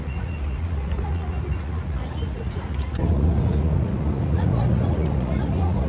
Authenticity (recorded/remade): remade